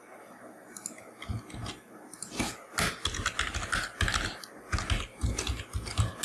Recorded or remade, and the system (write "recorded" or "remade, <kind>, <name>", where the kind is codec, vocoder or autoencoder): recorded